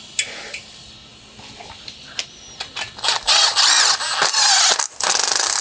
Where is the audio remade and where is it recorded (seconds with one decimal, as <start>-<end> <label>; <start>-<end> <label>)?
0.0-5.6 recorded